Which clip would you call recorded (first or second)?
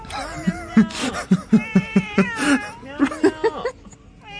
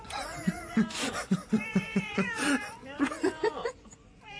first